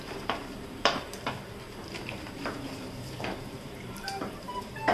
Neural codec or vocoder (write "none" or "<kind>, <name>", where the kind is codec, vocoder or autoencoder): vocoder, BigVGAN v2